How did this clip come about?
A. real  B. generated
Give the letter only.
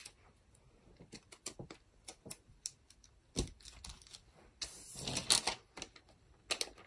A